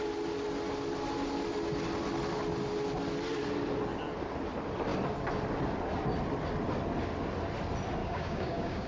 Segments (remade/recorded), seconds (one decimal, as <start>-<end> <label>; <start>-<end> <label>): 0.0-8.0 recorded; 8.0-8.9 remade